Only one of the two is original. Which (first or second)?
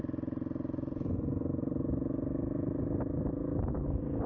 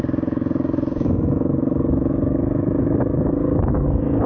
first